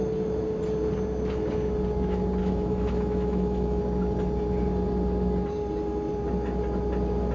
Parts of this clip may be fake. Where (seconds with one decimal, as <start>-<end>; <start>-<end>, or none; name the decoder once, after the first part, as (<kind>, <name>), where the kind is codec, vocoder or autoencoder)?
2.4-3.8 (autoencoder, DAC-VAE)